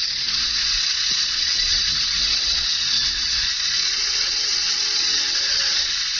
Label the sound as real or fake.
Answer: fake